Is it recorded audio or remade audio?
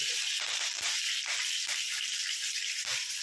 remade